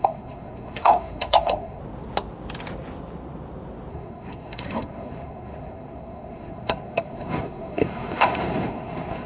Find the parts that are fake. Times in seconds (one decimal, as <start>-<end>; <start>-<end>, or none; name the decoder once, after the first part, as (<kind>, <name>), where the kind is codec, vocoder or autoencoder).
0.0-1.8 (codec, SNAC); 3.9-9.3